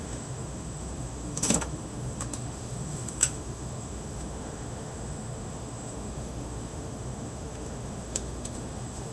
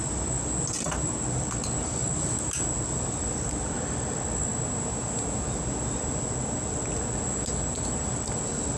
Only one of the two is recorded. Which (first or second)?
second